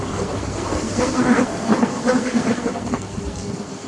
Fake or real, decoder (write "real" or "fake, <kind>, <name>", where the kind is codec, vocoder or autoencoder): fake, codec, SNAC